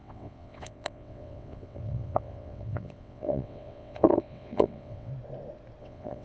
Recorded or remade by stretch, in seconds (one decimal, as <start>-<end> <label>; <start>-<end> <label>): 0.0-5.1 remade; 5.1-5.8 recorded; 5.8-6.2 remade